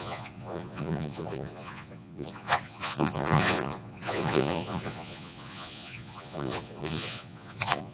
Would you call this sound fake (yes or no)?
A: yes